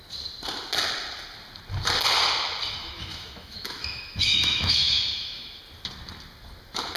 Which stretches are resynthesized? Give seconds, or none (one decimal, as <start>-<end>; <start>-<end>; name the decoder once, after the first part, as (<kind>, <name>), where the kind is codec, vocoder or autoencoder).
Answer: 2.8-5.6 (autoencoder, DAC-VAE)